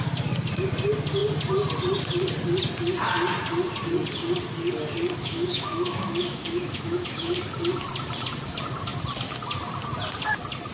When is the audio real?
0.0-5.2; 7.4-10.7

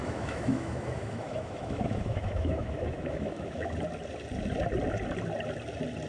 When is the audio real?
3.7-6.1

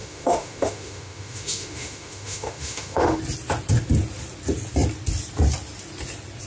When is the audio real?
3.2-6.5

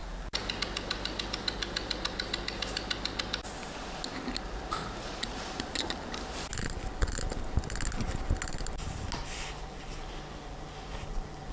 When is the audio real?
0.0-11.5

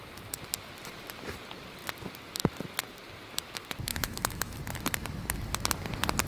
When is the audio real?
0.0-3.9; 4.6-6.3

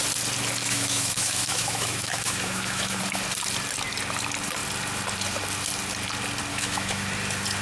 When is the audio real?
0.0-0.6; 3.0-6.5; 7.0-7.6

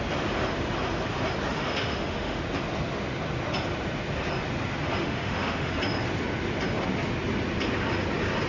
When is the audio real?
0.0-1.5; 2.4-5.0; 5.7-8.5

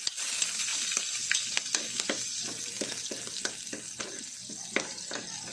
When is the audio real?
0.0-5.5